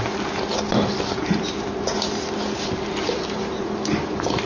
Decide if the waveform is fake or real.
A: real